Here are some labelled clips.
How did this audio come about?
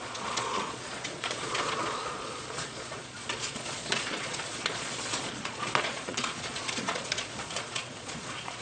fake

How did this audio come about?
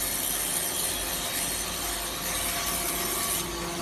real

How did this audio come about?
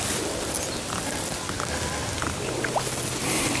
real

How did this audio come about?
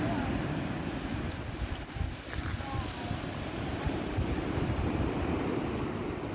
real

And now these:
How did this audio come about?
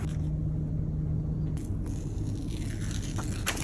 real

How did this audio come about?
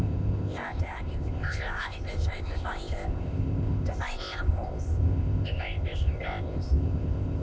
fake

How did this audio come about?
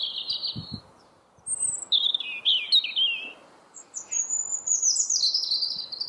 real